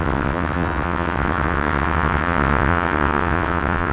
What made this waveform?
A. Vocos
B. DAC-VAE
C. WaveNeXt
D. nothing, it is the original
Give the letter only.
C